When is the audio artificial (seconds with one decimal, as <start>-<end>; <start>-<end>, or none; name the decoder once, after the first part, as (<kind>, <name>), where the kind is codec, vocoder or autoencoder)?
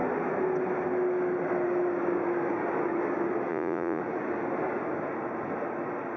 3.5-4.0 (vocoder, Vocos)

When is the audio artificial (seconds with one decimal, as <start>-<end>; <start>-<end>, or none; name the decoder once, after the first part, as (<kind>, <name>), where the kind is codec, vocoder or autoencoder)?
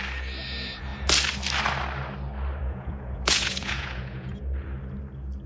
2.6-4.4 (vocoder, Vocos)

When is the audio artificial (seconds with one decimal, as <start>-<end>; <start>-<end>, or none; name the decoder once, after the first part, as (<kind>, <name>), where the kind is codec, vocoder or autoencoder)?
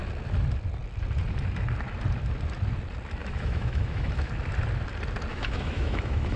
3.2-4.3 (autoencoder, DAC-VAE); 5.3-6.4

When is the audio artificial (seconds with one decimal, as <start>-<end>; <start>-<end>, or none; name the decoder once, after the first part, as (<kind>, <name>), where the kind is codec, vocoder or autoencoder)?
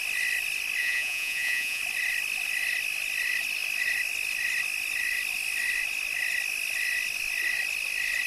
0.8-1.8 (vocoder, Vocos)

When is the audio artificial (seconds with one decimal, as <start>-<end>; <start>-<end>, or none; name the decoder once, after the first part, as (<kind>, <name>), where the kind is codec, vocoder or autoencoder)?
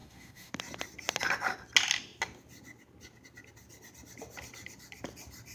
0.0-0.5 (autoencoder, DAC-VAE)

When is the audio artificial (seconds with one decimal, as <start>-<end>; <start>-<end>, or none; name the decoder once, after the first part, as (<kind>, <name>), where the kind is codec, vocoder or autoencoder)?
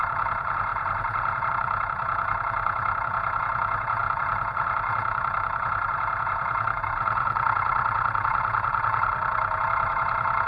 0.0-10.5 (vocoder, Vocos)